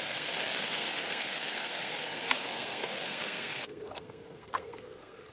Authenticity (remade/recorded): remade